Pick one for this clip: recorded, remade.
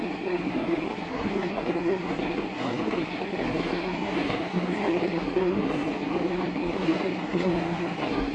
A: remade